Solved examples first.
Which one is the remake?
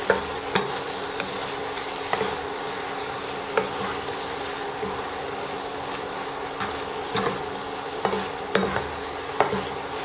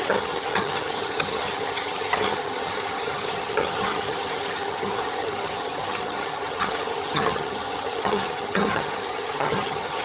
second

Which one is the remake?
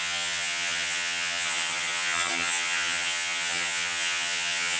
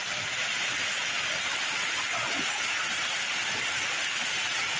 first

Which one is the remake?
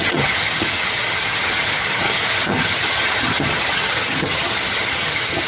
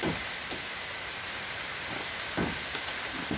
first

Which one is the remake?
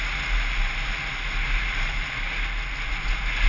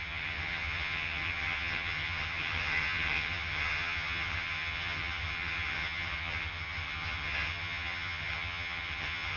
second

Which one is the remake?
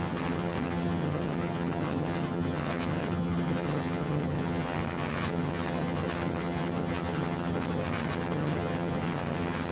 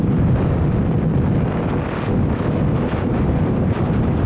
first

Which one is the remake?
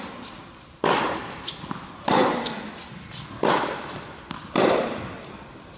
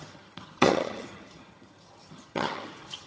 second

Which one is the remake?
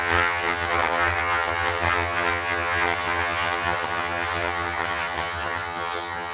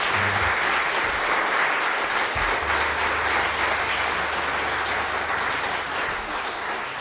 first